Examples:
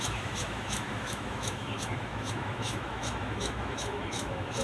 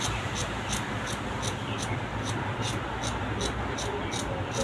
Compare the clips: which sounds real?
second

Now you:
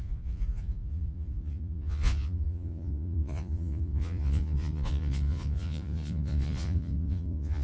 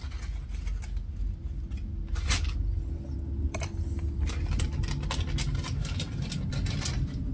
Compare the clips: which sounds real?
second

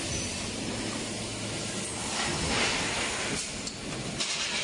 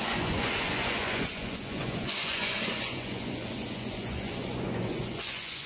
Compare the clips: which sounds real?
first